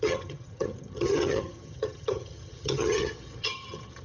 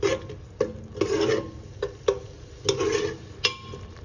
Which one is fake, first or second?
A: first